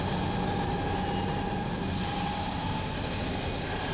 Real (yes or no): yes